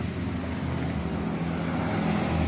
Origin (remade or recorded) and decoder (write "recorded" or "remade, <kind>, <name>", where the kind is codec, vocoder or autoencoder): recorded